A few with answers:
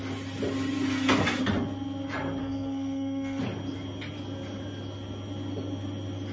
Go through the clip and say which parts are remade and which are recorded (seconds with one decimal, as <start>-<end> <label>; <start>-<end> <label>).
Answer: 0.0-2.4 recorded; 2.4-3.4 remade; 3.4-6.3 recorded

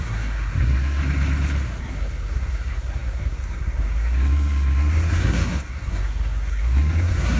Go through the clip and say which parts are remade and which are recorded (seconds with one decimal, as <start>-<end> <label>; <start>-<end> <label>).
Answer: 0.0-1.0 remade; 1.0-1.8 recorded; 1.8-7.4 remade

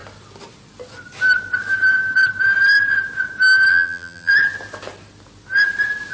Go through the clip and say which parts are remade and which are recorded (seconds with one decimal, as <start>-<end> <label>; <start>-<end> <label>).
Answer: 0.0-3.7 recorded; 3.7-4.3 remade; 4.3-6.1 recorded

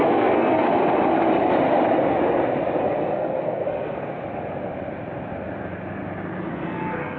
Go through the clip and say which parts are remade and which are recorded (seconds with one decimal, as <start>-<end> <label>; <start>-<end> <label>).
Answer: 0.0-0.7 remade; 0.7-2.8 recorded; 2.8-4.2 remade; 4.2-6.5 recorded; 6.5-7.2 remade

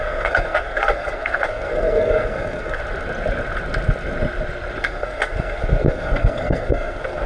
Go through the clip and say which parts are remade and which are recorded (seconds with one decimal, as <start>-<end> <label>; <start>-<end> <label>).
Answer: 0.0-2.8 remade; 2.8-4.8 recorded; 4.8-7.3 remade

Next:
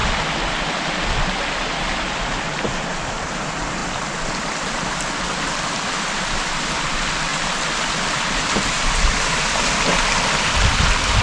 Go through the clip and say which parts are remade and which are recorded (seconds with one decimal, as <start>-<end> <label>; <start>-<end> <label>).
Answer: 0.0-3.8 remade; 3.8-4.4 recorded; 4.4-7.3 remade; 7.3-8.2 recorded; 8.2-11.2 remade

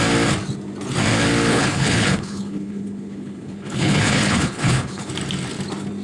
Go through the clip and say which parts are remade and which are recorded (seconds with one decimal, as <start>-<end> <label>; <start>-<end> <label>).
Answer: 0.0-1.5 recorded; 1.5-5.1 remade; 5.1-6.0 recorded